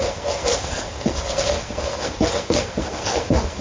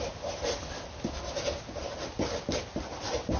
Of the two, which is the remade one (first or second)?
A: first